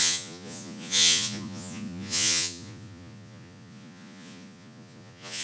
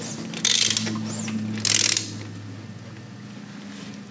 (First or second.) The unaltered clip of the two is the second